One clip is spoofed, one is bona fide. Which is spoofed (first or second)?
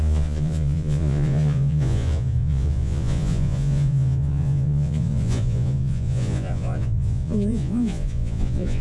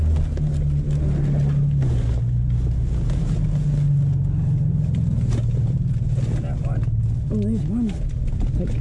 first